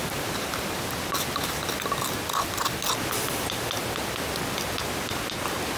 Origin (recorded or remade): recorded